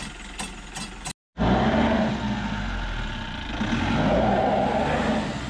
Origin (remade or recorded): recorded